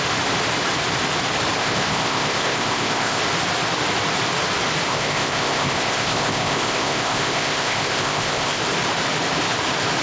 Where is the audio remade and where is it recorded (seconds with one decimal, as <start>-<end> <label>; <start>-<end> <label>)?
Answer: 0.0-1.6 recorded; 1.6-3.2 remade; 3.2-4.9 recorded; 4.9-8.6 remade; 8.6-10.0 recorded